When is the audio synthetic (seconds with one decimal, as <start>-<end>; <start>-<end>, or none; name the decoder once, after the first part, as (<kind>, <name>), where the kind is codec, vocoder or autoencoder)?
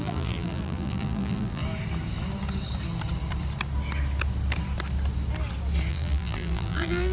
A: 0.0-1.6 (vocoder, BigVGAN v2); 5.9-7.1